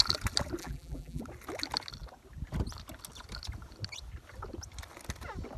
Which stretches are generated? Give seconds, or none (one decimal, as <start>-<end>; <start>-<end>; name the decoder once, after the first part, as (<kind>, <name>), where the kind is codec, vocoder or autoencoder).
0.6-1.2 (vocoder, BigVGAN v2)